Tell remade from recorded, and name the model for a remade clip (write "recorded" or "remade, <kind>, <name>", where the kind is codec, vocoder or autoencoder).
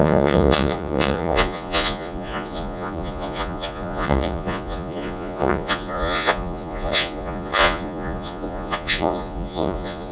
remade, vocoder, Vocos